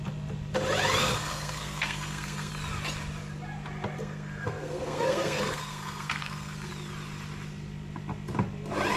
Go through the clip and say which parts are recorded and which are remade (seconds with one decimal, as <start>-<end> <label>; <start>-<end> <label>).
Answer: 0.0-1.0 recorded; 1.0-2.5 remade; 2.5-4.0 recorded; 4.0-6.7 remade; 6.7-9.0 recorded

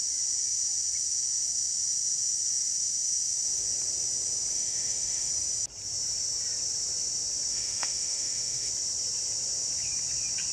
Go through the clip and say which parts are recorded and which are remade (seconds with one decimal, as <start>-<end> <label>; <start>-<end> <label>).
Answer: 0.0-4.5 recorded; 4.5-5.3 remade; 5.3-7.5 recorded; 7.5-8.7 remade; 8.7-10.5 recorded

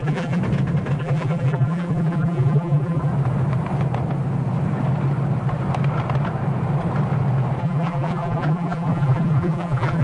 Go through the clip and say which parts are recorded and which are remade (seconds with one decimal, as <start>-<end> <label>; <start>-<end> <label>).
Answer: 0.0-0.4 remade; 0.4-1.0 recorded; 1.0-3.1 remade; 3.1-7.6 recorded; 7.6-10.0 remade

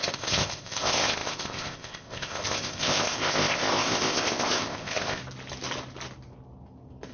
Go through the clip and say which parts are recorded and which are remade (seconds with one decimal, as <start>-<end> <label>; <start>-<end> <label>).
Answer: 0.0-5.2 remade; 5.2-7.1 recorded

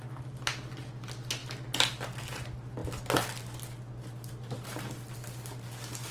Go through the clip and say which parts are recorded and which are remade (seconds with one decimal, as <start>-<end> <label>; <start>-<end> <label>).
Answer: 0.0-6.1 recorded

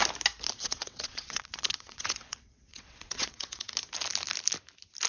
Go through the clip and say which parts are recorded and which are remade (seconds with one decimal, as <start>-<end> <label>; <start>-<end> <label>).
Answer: 0.0-0.6 recorded; 0.6-3.7 remade; 3.7-5.1 recorded

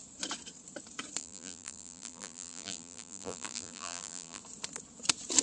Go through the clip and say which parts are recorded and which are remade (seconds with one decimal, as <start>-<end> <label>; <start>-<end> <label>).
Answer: 0.0-1.2 recorded; 1.2-4.4 remade; 4.4-5.4 recorded